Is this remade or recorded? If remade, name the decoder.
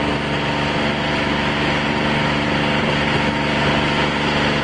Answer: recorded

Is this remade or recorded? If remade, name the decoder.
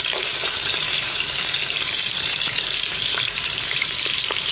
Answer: remade, vocoder, BigVGAN v2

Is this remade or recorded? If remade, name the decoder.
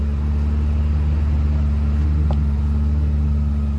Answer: recorded